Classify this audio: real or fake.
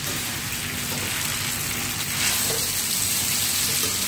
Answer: real